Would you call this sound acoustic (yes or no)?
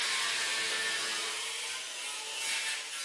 yes